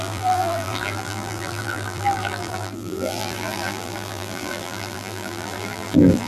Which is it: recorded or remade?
remade